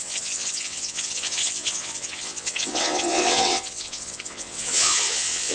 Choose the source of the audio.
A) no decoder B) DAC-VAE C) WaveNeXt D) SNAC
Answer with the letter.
C